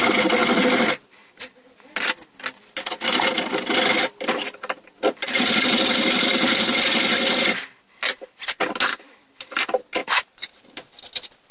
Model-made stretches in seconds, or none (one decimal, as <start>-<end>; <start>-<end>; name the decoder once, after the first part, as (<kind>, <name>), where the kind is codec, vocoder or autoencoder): 10.0-10.6 (vocoder, BigVGAN v2)